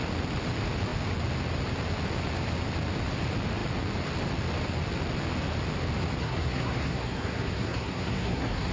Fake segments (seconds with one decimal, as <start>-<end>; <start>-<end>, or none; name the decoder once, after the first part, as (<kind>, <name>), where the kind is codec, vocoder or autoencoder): 6.2-8.7 (codec, SNAC)